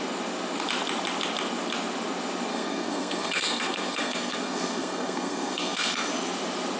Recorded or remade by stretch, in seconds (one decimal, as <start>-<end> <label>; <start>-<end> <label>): 0.0-2.5 recorded; 2.5-6.1 remade; 6.1-6.8 recorded